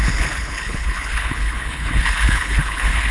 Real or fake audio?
fake